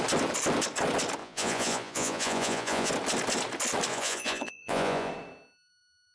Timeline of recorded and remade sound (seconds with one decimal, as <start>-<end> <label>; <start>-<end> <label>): 0.0-1.2 recorded; 1.2-2.9 remade; 2.9-3.9 recorded; 3.9-5.1 remade; 5.1-6.1 recorded